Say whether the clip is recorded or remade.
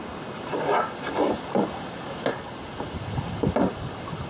recorded